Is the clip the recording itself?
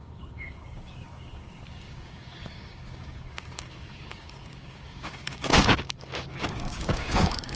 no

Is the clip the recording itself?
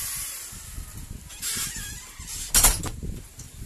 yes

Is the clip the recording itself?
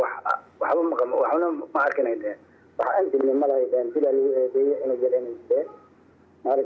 yes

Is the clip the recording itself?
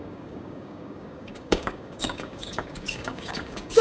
no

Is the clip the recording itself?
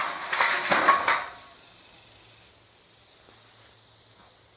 yes